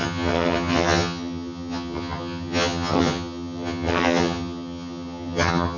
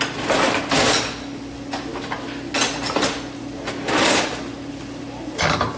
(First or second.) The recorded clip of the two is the second